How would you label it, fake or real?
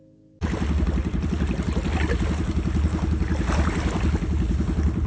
real